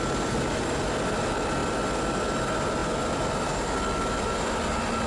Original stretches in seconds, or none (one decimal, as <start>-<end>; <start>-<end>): 1.6-2.1